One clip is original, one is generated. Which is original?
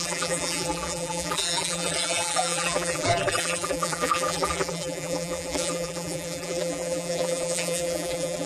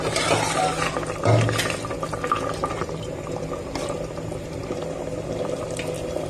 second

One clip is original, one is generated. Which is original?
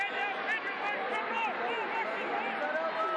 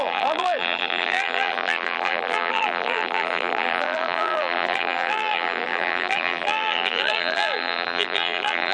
first